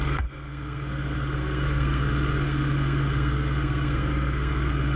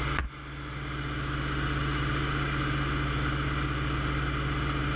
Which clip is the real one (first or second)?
second